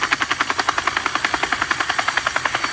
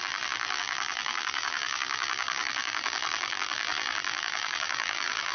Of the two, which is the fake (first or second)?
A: second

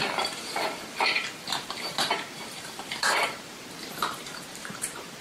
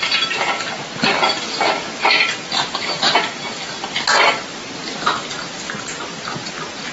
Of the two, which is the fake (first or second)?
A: first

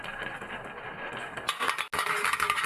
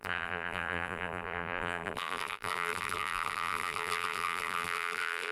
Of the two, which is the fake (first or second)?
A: second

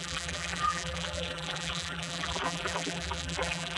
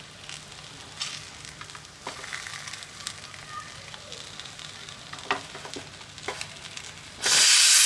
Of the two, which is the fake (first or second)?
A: first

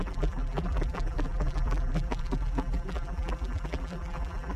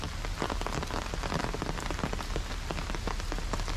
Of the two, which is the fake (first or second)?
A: first